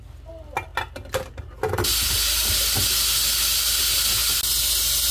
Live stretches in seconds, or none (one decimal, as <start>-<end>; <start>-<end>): 0.0-5.1